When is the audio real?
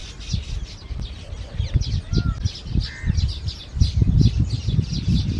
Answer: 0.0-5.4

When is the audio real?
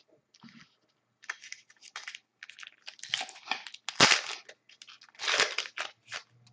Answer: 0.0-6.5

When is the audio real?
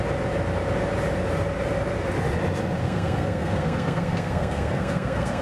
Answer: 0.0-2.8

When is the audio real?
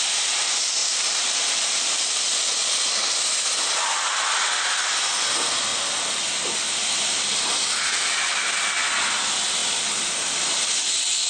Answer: 0.0-0.8; 3.3-11.3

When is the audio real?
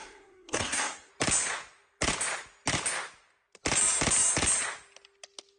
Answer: 1.1-5.6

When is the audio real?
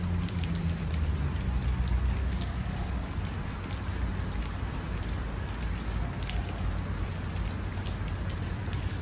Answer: 0.0-2.2; 3.2-9.0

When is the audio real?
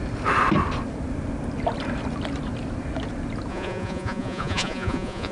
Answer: 0.0-3.5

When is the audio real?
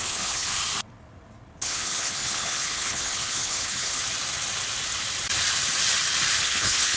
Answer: 0.5-1.6; 4.0-6.4